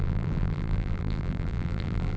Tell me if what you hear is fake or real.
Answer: fake